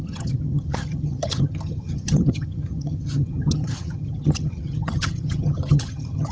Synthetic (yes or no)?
yes